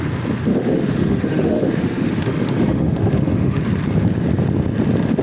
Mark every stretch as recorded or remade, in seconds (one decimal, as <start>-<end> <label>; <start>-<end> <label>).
0.0-0.5 recorded; 0.5-3.6 remade; 3.6-5.2 recorded

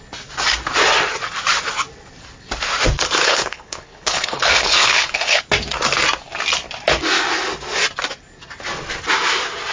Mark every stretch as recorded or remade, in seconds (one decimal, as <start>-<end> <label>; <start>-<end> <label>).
0.0-3.2 recorded; 3.2-5.4 remade; 5.4-9.7 recorded

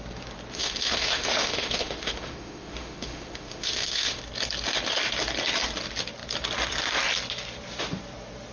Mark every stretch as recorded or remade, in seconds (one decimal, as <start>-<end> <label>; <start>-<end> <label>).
0.0-0.5 recorded; 0.5-4.2 remade; 4.2-8.5 recorded

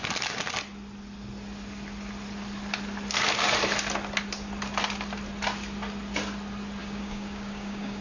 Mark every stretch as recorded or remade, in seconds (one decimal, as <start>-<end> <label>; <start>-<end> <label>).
0.0-6.8 recorded; 6.8-8.0 remade

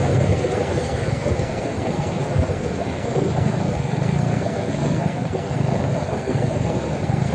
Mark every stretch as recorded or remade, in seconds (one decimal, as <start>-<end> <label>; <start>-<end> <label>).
0.0-7.3 remade